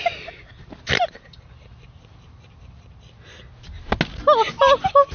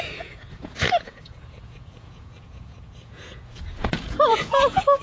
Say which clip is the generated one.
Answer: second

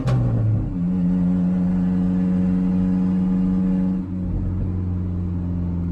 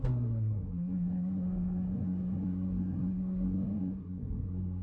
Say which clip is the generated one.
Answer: second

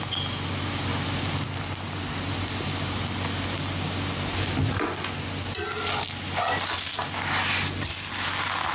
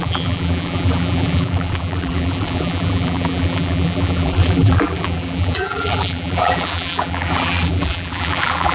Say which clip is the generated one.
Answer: second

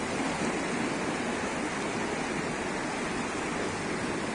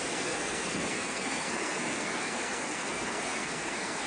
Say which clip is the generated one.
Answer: second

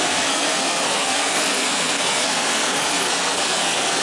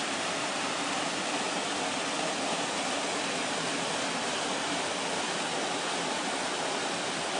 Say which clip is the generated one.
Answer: first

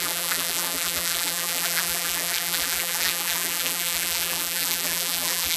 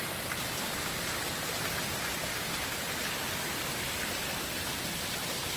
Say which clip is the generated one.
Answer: first